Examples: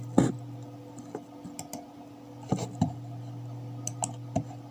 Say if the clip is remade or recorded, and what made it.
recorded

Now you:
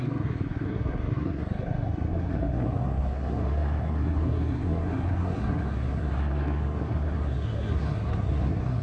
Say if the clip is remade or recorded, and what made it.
remade, codec, SNAC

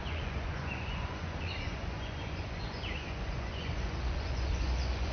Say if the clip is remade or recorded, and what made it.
remade, vocoder, Vocos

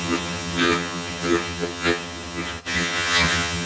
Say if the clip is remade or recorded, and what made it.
remade, vocoder, HiFi-GAN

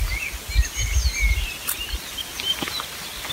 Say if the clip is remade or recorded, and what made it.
recorded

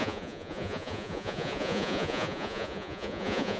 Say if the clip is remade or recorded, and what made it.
remade, vocoder, Vocos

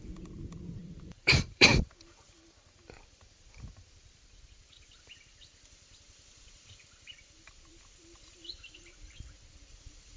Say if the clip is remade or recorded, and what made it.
remade, vocoder, BigVGAN v2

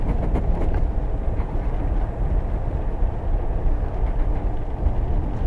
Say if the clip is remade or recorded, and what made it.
recorded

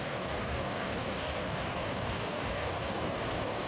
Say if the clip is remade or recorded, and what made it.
remade, codec, DAC